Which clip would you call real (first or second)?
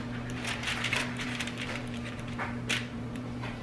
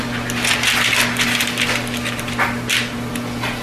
second